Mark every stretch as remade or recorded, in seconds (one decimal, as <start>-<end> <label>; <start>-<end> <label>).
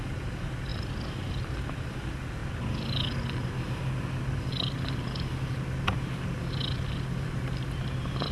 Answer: 0.0-0.7 remade; 0.7-1.4 recorded; 1.4-2.4 remade; 2.4-4.2 recorded; 4.2-8.3 remade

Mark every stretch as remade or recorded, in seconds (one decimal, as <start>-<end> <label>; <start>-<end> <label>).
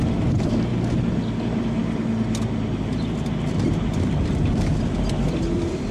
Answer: 0.0-5.9 recorded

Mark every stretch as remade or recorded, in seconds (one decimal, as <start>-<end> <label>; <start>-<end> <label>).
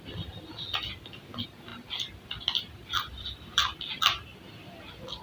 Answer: 0.0-5.2 recorded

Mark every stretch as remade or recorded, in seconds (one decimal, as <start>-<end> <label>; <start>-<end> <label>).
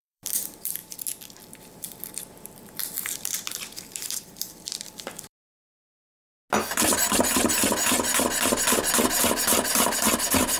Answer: 0.0-0.8 remade; 0.8-1.4 recorded; 1.4-5.4 remade; 5.4-9.2 recorded; 9.2-10.6 remade